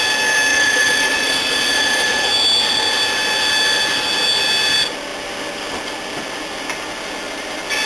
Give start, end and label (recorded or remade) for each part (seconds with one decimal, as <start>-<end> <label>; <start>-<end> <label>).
0.0-0.5 recorded; 0.5-2.3 remade; 2.3-7.9 recorded